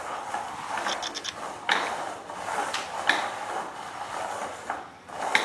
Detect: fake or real real